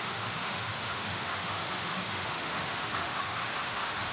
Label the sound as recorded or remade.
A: remade